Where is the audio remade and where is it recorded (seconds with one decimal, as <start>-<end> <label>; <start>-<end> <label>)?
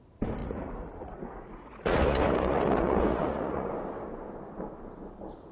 0.0-0.4 recorded; 0.4-3.7 remade; 3.7-5.5 recorded